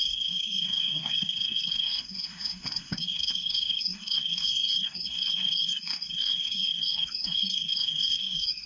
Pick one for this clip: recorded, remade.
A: remade